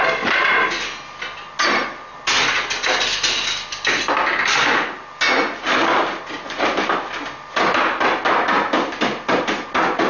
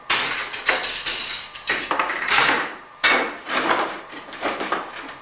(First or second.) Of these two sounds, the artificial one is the second